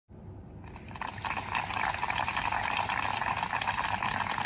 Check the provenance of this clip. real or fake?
real